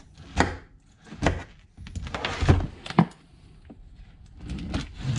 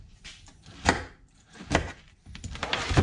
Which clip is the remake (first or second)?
second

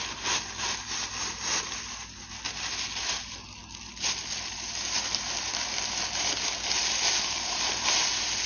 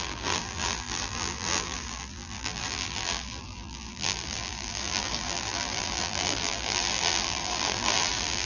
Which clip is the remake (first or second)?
second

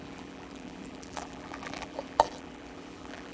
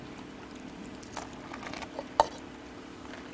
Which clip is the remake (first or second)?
first